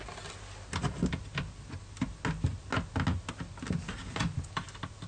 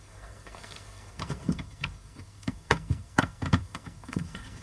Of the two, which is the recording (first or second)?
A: first